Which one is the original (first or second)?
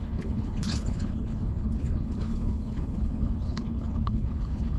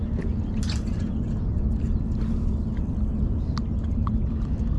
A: second